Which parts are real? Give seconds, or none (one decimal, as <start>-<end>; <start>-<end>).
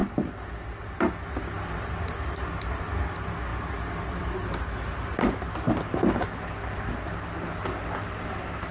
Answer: 0.0-8.7